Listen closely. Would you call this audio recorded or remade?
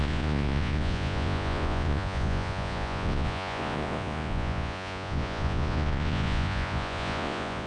remade